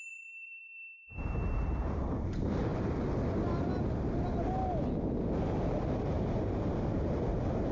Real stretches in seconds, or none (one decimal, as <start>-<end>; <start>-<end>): 2.7-5.8